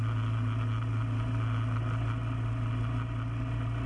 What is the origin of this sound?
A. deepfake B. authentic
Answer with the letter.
B